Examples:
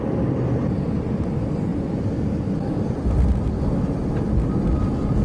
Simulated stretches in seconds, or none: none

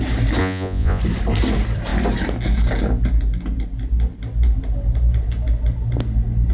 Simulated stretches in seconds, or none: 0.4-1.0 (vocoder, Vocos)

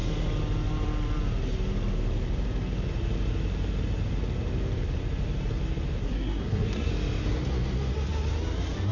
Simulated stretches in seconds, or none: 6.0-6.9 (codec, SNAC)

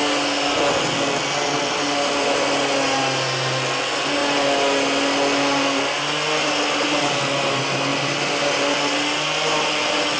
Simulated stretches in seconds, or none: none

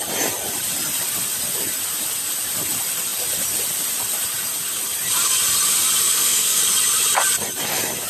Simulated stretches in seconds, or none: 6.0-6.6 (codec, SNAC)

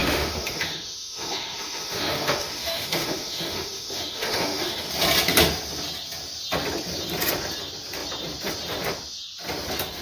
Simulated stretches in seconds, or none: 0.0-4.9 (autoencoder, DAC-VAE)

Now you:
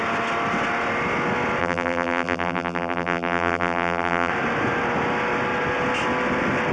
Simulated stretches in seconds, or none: 1.6-4.3 (vocoder, BigVGAN v2)